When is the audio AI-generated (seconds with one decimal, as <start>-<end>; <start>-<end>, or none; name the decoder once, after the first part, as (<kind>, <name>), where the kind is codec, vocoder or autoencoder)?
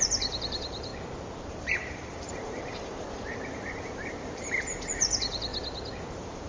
0.0-0.9 (vocoder, BigVGAN v2); 1.5-5.5; 6.1-6.5